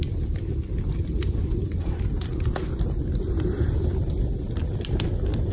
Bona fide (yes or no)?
yes